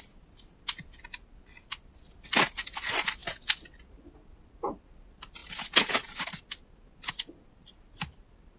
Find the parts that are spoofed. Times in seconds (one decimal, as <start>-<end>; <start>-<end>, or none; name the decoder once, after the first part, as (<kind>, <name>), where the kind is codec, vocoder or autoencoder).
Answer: none